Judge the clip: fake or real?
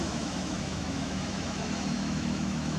fake